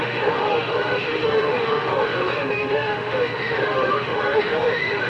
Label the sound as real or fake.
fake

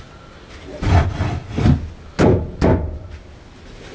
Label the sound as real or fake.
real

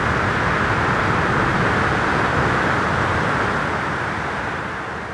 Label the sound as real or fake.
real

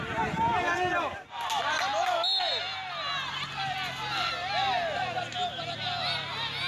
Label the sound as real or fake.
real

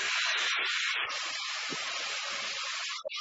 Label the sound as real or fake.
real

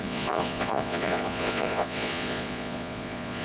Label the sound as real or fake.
fake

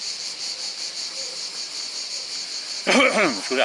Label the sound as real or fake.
real